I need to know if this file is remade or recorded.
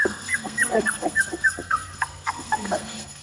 remade